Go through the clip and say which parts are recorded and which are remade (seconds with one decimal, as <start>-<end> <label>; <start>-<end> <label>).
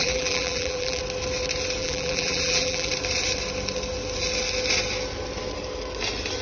0.0-1.0 remade; 1.0-1.8 recorded; 1.8-2.9 remade; 2.9-6.4 recorded